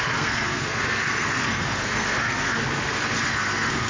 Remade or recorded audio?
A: remade